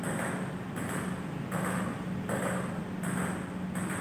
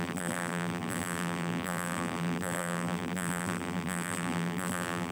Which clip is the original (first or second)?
first